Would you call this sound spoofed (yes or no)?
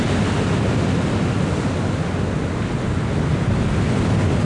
no